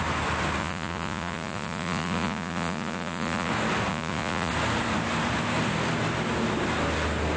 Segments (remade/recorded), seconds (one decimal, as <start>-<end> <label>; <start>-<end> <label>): 0.0-0.6 recorded; 0.6-3.5 remade; 3.5-3.9 recorded; 3.9-4.5 remade; 4.5-7.4 recorded